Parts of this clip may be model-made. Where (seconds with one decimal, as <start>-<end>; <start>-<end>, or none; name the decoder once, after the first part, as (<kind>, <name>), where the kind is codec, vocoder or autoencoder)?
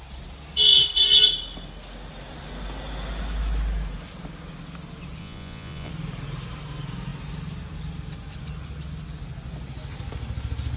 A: 5.2-5.9 (vocoder, Vocos)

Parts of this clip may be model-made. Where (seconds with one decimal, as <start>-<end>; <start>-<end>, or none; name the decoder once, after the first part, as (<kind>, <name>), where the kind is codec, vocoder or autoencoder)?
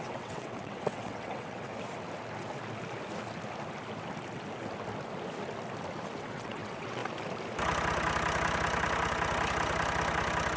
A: 0.0-1.7 (vocoder, WaveNeXt); 6.2-7.0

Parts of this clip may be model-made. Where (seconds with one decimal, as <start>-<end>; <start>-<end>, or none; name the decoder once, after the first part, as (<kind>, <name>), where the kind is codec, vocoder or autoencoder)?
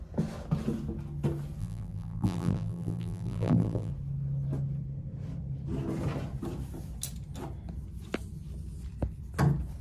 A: 1.6-3.9 (vocoder, BigVGAN v2)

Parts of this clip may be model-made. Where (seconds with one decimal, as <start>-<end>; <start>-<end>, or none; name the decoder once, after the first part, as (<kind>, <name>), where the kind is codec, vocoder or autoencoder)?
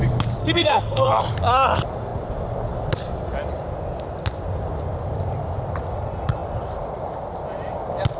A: 0.4-1.2 (codec, SNAC)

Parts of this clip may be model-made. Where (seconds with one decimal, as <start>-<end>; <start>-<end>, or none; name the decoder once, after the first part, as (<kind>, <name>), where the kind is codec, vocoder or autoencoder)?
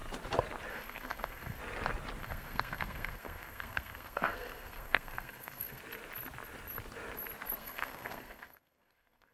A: 0.7-1.6 (codec, SNAC); 2.2-5.8; 7.6-9.3